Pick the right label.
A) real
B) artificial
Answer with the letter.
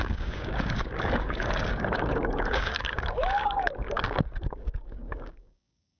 B